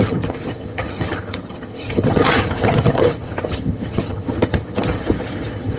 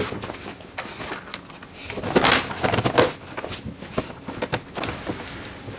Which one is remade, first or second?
first